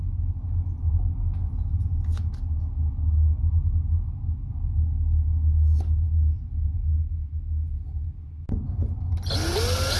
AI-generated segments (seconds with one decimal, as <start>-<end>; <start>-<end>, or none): none